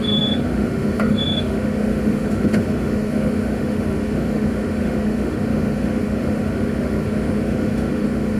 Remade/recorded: remade